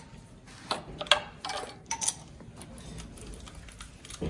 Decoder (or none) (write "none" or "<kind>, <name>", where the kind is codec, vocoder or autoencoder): none